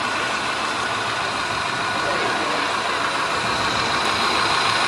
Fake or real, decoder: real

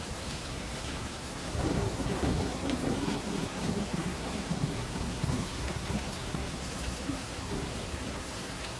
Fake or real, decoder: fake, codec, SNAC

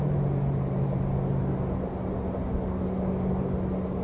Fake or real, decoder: real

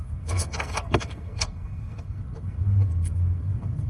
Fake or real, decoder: fake, codec, SNAC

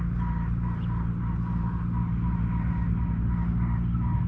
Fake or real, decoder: real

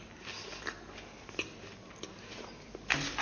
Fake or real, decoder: real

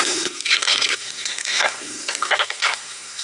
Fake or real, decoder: fake, codec, SNAC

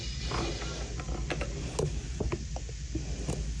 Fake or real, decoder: real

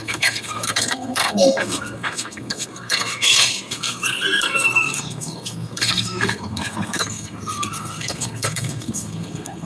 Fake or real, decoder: fake, codec, SNAC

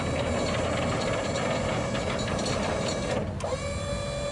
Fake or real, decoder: real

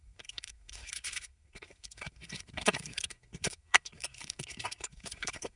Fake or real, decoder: fake, codec, SNAC